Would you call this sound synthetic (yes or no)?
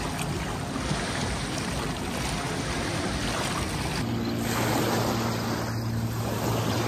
no